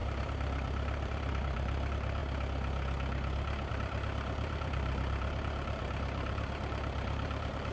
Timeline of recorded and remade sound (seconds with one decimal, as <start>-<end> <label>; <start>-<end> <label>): 0.0-2.2 remade; 2.2-3.7 recorded; 3.7-7.7 remade